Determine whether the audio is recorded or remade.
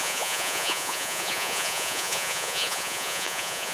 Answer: remade